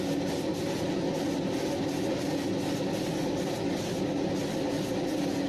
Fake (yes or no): no